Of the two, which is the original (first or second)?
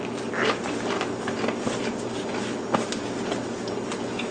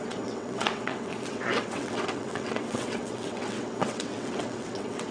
first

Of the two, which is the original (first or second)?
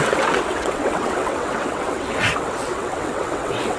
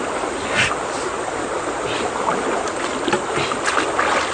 second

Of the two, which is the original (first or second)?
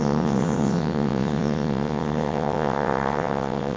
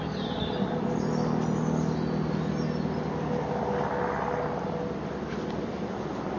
second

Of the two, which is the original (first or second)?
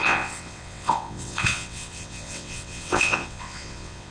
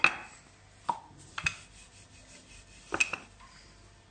second